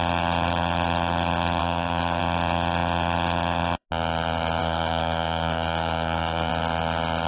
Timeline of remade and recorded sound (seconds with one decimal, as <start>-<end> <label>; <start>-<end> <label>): 0.0-1.6 recorded; 1.6-2.2 remade; 2.2-4.6 recorded; 4.6-6.5 remade; 6.5-7.3 recorded

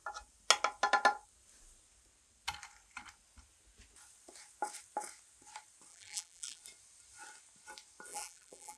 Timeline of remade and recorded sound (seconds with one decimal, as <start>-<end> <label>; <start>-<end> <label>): 0.0-5.9 recorded; 5.9-6.6 remade; 6.6-8.1 recorded; 8.1-8.8 remade